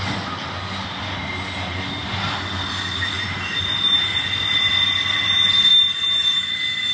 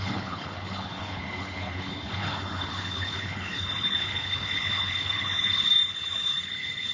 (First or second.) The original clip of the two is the first